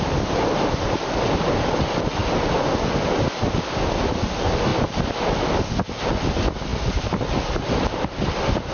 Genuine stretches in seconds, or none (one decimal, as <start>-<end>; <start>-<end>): 0.0-8.7